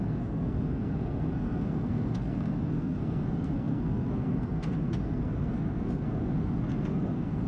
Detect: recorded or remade remade